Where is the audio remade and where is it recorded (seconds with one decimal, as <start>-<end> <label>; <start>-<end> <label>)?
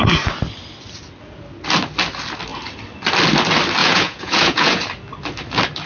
0.0-3.8 recorded; 3.8-4.8 remade; 4.8-5.9 recorded